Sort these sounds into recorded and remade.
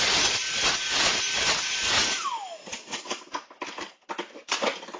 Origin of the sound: recorded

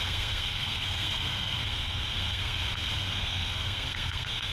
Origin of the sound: remade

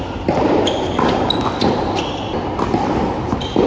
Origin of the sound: recorded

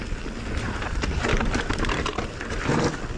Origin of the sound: recorded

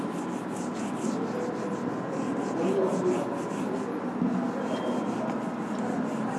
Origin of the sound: recorded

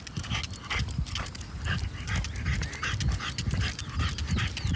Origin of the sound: recorded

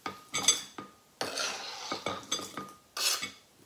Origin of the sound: recorded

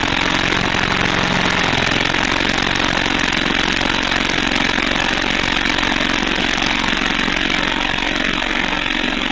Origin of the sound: recorded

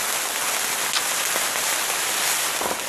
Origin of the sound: recorded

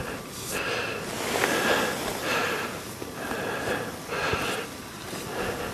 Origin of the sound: recorded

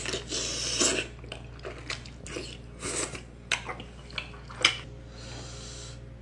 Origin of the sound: recorded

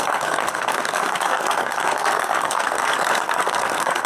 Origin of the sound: remade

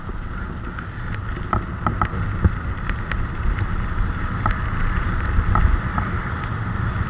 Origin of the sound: recorded